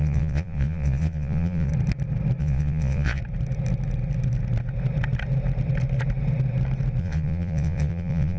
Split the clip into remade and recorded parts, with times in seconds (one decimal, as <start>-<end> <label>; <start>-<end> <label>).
0.0-1.7 remade; 1.7-2.4 recorded; 2.4-3.2 remade; 3.2-7.0 recorded; 7.0-8.4 remade